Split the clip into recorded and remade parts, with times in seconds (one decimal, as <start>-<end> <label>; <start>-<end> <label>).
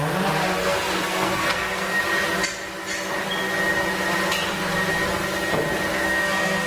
0.0-0.6 recorded; 0.6-2.0 remade; 2.0-5.9 recorded; 5.9-6.7 remade